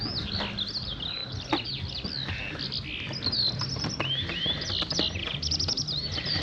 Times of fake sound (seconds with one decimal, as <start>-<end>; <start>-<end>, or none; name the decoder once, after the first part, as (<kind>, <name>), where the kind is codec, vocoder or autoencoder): none